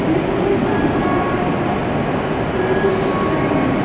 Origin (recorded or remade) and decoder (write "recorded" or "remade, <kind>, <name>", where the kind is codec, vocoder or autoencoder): recorded